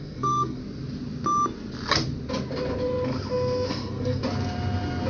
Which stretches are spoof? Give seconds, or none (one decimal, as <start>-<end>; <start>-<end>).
0.0-0.6; 3.7-4.2